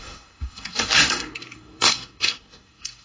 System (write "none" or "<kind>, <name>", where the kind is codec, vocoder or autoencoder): codec, SNAC